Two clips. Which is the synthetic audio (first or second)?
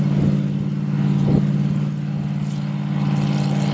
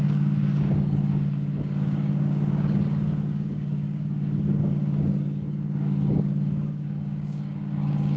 second